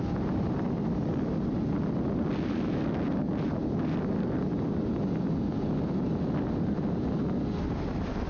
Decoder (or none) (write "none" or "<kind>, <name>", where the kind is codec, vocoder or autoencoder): none